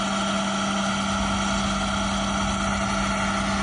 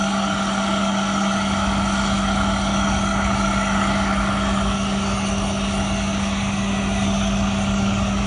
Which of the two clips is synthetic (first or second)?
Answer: second